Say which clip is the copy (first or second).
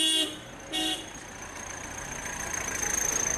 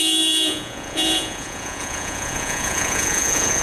second